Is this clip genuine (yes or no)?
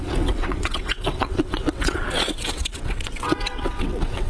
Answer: no